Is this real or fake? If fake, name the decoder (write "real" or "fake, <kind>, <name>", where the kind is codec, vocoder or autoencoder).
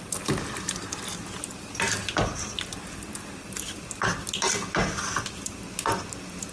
real